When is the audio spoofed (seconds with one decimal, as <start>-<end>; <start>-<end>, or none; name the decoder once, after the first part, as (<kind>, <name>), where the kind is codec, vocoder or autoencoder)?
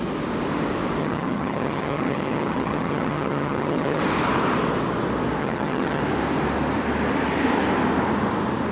1.0-4.0 (vocoder, HiFi-GAN); 5.4-6.0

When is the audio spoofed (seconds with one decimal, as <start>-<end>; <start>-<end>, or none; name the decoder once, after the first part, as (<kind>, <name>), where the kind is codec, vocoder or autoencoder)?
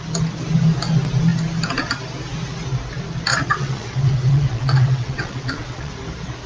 3.3-5.9 (vocoder, WaveNeXt)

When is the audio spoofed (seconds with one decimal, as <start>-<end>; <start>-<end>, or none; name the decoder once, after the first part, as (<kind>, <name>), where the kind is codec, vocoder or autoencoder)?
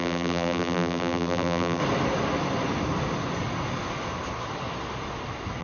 0.0-1.8 (vocoder, BigVGAN v2)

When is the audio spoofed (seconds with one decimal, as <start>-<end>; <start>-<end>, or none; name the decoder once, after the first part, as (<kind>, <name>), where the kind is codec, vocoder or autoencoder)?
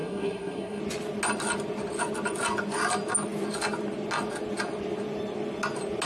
0.0-0.8 (codec, SNAC)